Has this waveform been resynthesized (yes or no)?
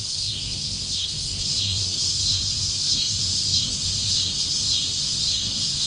yes